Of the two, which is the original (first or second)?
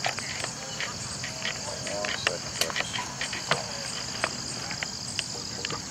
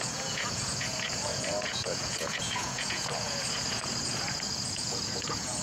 first